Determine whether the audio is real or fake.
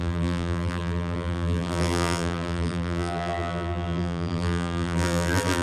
fake